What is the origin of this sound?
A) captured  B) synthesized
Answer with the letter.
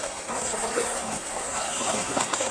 B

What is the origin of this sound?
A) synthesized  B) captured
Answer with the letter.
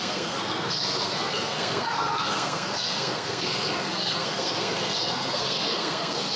A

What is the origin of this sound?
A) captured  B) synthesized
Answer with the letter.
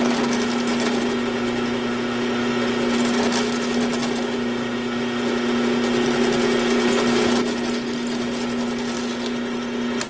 A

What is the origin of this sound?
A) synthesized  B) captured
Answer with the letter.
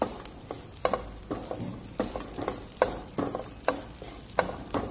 B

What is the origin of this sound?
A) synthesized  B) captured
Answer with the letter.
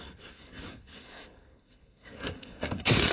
A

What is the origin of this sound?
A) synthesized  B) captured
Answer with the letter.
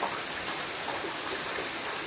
B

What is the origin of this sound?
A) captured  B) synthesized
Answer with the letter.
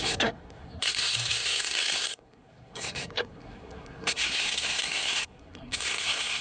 B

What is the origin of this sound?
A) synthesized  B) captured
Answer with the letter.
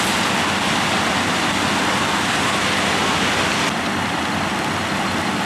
B